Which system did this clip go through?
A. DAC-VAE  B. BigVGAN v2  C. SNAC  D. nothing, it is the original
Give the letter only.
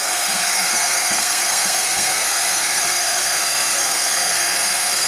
C